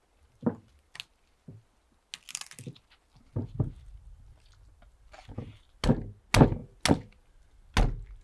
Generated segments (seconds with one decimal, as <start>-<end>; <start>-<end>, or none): none